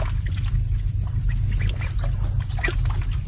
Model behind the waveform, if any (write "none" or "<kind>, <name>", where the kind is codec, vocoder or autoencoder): none